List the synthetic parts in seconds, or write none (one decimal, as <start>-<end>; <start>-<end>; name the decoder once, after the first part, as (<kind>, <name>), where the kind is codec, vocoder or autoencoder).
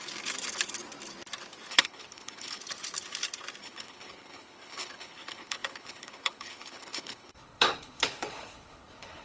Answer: 1.7-2.6 (codec, HILCodec); 3.6-9.2